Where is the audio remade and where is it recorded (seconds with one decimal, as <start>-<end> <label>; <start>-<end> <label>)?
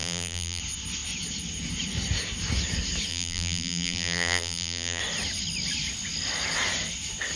0.0-0.6 remade; 0.6-3.1 recorded; 3.1-5.0 remade; 5.0-7.4 recorded